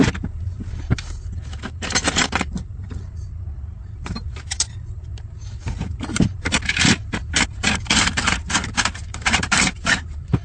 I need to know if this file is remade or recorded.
remade